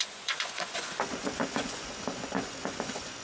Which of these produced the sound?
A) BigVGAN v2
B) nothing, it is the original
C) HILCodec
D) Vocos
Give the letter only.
D